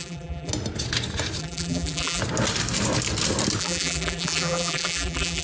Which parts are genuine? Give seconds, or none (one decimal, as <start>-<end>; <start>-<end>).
0.5-1.4; 2.2-3.6